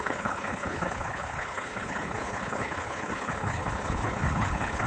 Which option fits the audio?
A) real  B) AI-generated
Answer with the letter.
B